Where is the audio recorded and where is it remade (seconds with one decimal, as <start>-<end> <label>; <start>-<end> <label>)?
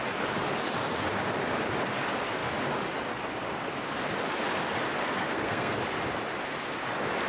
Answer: 0.0-5.0 recorded; 5.0-5.8 remade; 5.8-7.3 recorded